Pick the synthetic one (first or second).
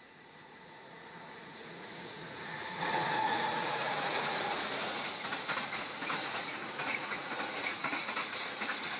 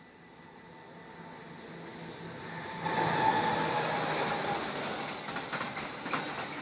first